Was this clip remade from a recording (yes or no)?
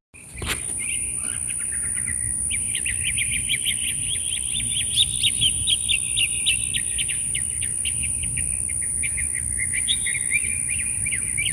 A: no